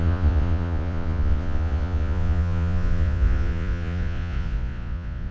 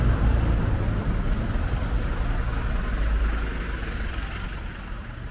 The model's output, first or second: first